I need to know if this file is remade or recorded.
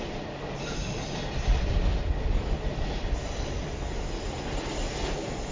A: recorded